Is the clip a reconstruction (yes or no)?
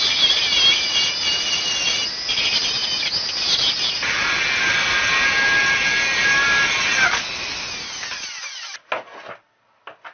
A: no